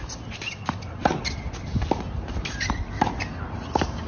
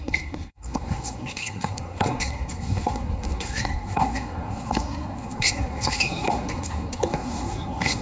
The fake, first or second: second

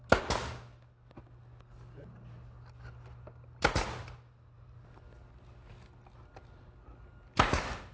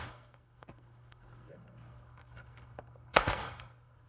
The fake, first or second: second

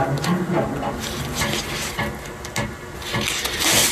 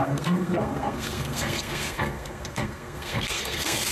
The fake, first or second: second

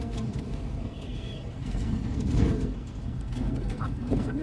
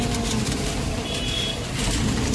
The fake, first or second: first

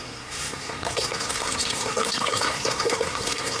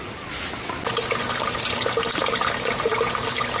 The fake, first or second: first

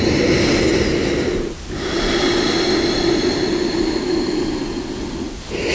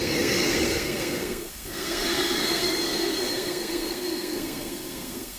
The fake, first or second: second